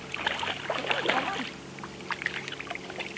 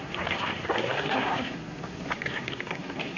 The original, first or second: first